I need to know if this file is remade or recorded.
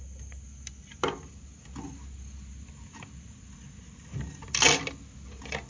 recorded